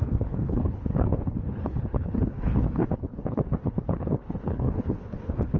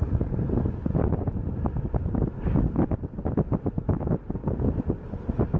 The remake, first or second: first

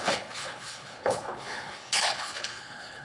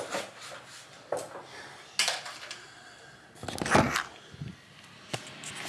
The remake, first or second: first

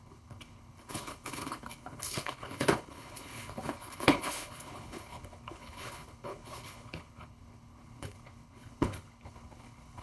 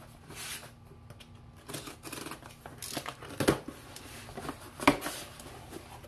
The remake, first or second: first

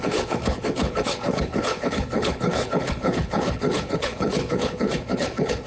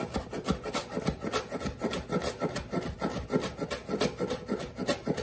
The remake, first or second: first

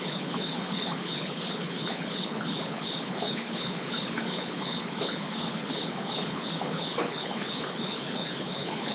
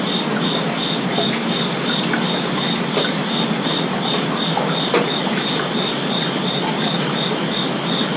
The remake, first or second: first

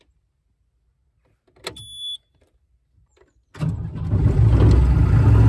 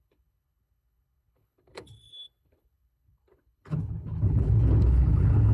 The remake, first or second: second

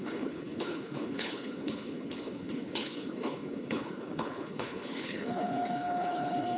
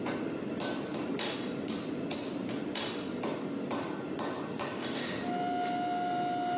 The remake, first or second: first